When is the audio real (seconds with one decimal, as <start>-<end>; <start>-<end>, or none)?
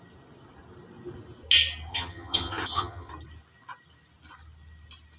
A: 0.0-1.9; 3.1-5.2